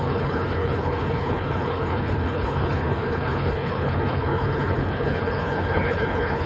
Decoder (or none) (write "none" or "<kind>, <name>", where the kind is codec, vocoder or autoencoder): codec, HILCodec